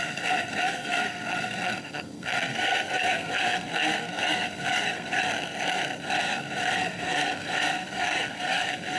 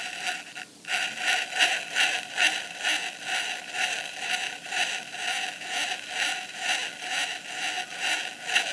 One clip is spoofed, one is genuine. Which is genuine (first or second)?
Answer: second